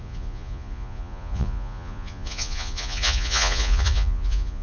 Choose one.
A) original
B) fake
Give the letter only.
B